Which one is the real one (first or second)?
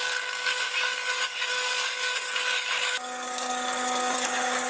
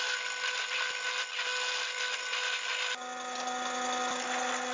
second